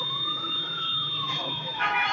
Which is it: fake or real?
fake